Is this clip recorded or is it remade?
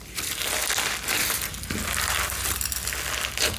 recorded